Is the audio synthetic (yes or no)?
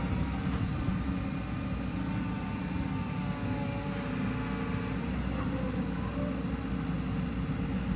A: no